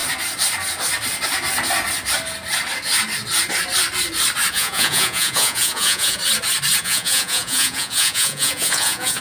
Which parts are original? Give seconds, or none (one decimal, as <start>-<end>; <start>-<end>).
0.0-4.5; 6.2-6.8